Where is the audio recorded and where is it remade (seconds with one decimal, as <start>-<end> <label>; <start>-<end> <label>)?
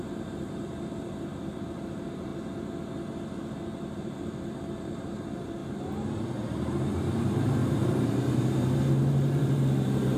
0.0-2.3 remade; 2.3-3.8 recorded; 3.8-5.6 remade; 5.6-6.2 recorded; 6.2-10.2 remade